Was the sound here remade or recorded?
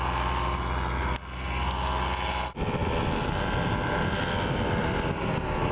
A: recorded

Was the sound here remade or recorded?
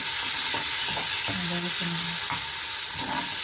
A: recorded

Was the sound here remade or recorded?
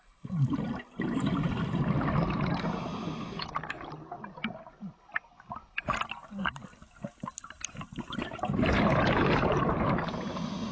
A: recorded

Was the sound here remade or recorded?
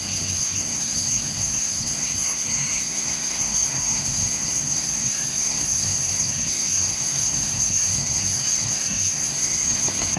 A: remade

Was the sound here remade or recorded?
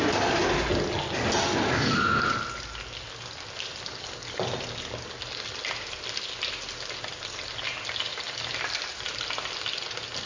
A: recorded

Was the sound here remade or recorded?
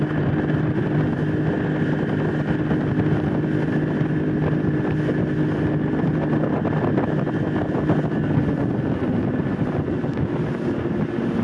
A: recorded